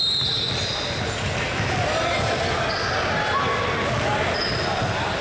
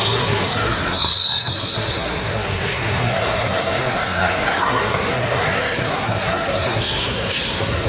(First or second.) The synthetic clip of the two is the second